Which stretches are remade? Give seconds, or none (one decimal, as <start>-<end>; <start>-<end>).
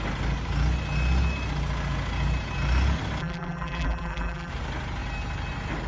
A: 3.2-4.5